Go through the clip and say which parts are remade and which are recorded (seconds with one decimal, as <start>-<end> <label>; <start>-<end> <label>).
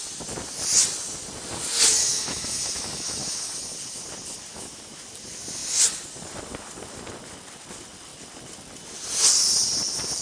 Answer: 0.0-2.0 recorded; 2.0-3.4 remade; 3.4-4.5 recorded; 4.5-5.0 remade; 5.0-10.2 recorded